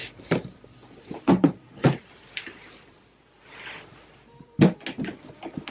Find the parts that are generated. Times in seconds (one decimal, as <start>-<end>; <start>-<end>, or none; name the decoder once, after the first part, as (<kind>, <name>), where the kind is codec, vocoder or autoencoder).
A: 0.0-3.9 (vocoder, BigVGAN v2); 5.1-5.7